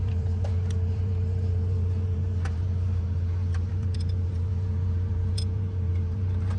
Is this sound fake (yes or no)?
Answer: yes